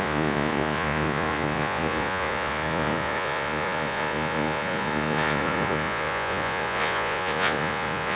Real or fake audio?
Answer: fake